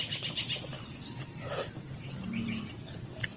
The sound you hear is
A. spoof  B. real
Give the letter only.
B